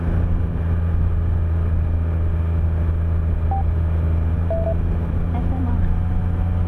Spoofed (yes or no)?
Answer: no